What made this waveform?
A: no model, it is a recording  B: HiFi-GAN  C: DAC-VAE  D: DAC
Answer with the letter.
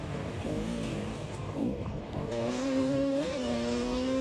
D